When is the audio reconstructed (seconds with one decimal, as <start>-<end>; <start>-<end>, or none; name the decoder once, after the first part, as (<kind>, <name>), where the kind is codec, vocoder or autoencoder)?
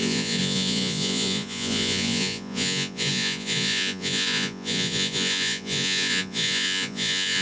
0.0-7.4 (vocoder, Vocos)